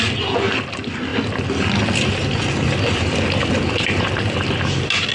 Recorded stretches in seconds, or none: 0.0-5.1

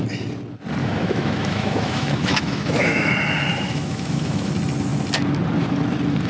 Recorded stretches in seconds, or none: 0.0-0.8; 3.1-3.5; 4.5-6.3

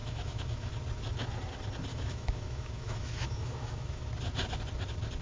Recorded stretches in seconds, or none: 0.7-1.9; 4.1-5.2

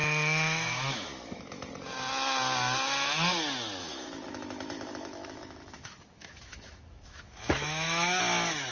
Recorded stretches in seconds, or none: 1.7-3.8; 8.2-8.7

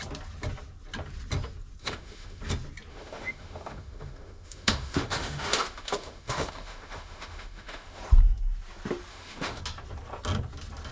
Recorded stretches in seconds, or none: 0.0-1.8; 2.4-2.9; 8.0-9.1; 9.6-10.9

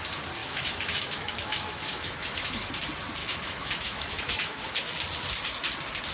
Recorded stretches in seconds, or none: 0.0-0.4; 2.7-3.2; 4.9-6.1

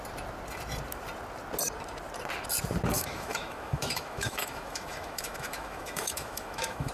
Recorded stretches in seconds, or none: 0.0-2.9

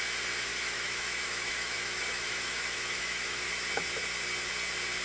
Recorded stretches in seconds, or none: 0.0-0.5; 3.5-5.0